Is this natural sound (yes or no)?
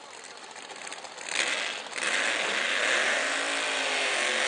yes